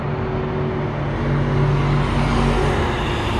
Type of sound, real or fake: real